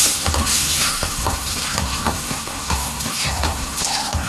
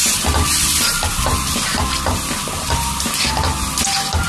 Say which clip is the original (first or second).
second